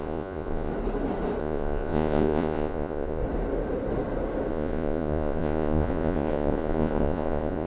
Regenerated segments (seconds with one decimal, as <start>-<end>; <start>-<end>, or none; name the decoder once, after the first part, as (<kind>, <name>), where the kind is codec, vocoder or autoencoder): 0.0-0.7 (vocoder, Vocos); 1.4-3.2; 4.5-7.7